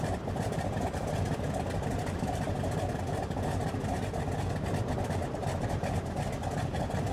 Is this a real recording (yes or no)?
yes